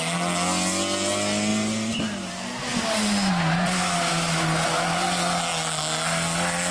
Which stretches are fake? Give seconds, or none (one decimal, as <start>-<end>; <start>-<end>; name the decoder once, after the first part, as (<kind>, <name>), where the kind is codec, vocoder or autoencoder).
none